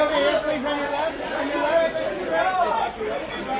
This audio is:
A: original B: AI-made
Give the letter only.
A